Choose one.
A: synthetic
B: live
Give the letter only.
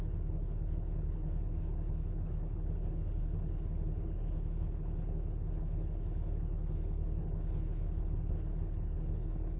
A